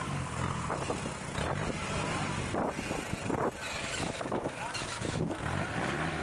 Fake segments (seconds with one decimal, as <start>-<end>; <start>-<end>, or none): 3.6-5.4